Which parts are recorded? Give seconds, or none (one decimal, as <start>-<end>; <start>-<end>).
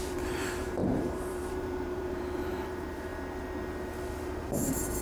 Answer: 3.1-4.5